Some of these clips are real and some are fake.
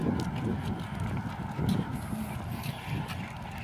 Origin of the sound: real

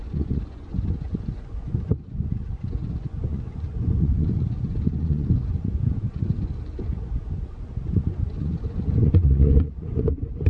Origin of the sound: fake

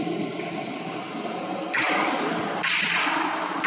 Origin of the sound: real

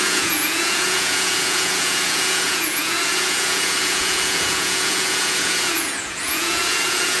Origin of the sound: fake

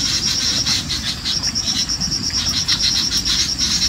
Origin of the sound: real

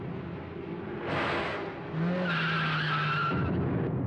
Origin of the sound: real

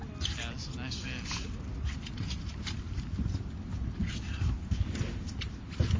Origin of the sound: real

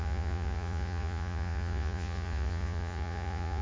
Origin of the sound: fake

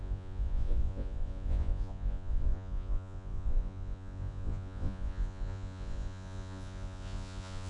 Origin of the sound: fake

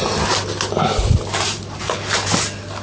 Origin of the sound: real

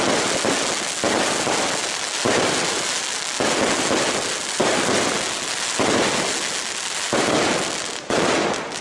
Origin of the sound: real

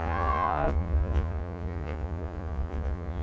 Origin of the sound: fake